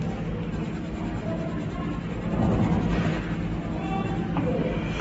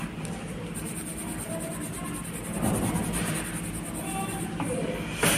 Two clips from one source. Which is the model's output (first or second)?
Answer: second